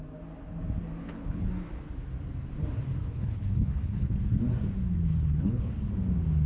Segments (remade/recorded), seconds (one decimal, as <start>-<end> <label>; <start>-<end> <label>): 0.0-1.0 recorded; 1.0-1.5 remade; 1.5-3.0 recorded; 3.0-4.2 remade; 4.2-5.1 recorded; 5.1-5.7 remade; 5.7-6.5 recorded